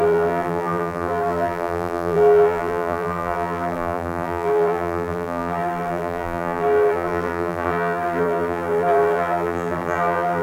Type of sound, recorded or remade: remade